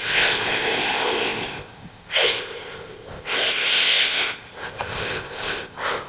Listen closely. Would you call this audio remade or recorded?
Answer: remade